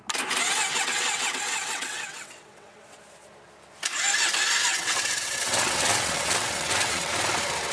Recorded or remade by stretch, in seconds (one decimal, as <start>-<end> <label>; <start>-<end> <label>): 0.0-0.7 recorded; 0.7-3.0 remade; 3.0-4.7 recorded; 4.7-7.1 remade; 7.1-7.7 recorded